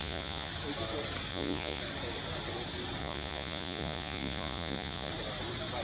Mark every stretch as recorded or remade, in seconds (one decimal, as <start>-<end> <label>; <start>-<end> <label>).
0.0-0.5 remade; 0.5-1.3 recorded; 1.3-1.8 remade; 1.8-3.0 recorded; 3.0-5.1 remade; 5.1-5.8 recorded